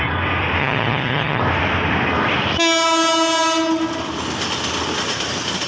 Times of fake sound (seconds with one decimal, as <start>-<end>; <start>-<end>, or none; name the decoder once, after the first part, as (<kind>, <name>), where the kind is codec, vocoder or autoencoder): 0.6-1.4 (vocoder, HiFi-GAN)